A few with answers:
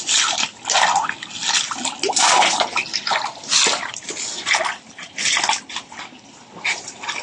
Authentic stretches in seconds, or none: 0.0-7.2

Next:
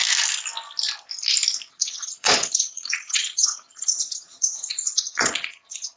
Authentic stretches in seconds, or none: 0.0-1.7